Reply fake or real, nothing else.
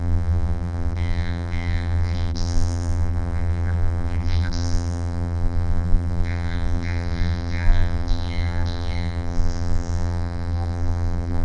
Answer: fake